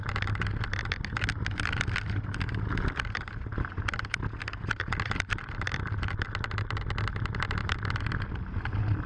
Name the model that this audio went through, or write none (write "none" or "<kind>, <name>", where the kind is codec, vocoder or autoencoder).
none